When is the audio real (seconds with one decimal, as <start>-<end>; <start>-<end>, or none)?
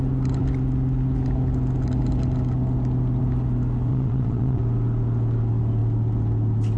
0.0-3.9; 4.6-6.8